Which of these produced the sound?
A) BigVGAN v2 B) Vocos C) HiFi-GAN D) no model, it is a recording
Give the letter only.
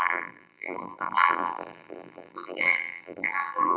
A